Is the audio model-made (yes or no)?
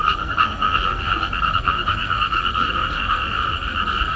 yes